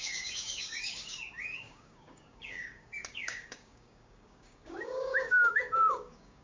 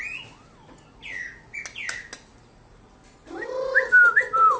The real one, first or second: second